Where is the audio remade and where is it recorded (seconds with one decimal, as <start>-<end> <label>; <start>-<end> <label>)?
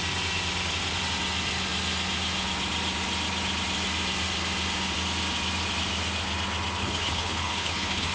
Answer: 0.0-6.8 recorded; 6.8-8.1 remade